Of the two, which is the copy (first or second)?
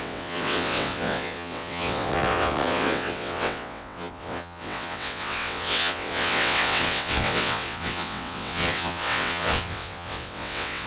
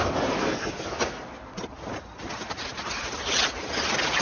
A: first